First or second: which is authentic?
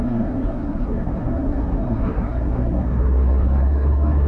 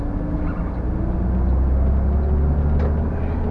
second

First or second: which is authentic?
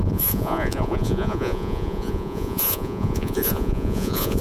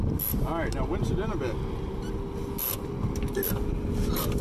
second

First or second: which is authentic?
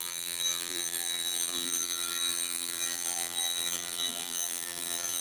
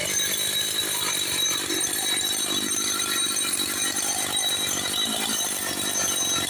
second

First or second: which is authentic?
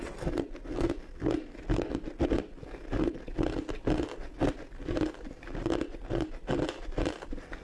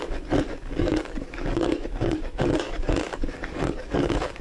first